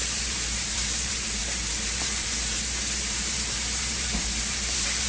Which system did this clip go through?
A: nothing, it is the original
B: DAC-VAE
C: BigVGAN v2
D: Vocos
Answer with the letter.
C